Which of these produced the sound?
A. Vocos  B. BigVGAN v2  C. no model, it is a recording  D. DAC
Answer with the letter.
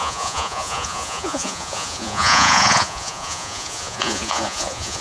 A